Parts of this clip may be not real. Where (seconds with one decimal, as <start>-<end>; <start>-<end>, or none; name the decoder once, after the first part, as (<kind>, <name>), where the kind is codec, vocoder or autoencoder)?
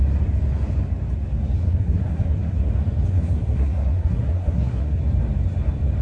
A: 1.6-2.7 (codec, SNAC); 3.1-5.0